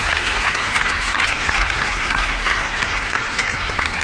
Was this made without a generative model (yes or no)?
no